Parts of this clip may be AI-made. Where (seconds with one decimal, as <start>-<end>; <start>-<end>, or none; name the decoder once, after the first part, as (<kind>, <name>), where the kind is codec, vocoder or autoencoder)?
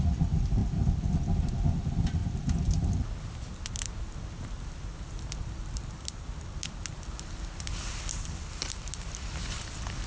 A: 0.0-2.2 (vocoder, BigVGAN v2); 5.2-10.1